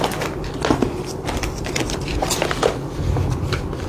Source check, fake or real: fake